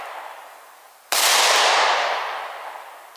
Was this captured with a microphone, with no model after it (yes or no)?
yes